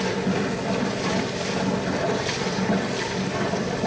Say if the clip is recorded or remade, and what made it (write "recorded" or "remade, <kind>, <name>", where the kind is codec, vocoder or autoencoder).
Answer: recorded